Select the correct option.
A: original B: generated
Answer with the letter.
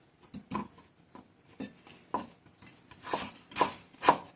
A